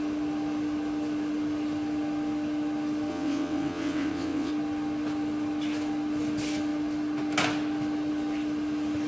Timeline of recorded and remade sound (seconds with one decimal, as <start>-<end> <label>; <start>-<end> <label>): 0.0-3.1 recorded; 3.1-4.5 remade; 4.5-9.1 recorded